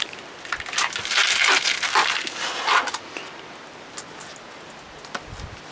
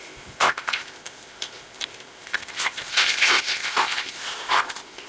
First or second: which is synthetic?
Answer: second